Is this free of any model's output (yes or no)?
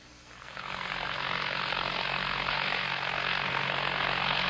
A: no